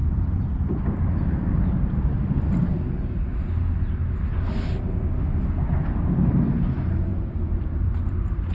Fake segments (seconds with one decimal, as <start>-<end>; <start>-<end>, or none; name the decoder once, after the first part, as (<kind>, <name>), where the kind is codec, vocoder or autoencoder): 0.0-2.6 (vocoder, BigVGAN v2); 7.1-7.9